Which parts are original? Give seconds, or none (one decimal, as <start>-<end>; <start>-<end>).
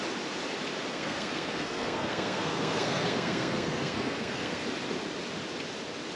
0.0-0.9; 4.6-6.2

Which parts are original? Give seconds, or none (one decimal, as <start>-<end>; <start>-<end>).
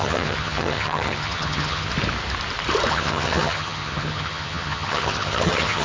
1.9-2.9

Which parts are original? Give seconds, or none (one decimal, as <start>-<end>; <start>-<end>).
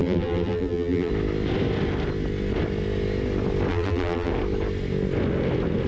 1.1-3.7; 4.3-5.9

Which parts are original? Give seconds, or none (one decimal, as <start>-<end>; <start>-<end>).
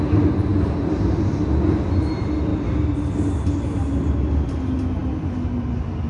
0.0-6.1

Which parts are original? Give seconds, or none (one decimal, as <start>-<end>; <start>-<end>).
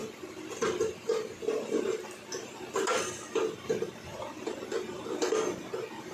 0.0-4.1; 5.0-6.1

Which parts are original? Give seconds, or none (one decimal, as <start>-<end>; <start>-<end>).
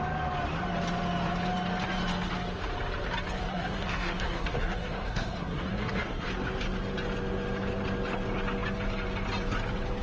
0.0-3.5; 6.3-10.0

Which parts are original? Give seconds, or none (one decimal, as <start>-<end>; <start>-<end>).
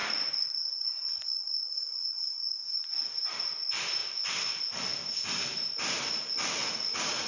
1.1-6.6